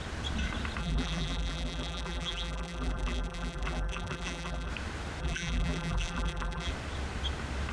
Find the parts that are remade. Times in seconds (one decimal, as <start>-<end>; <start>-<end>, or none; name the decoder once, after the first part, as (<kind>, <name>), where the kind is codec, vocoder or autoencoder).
0.8-4.7 (vocoder, BigVGAN v2); 5.2-6.7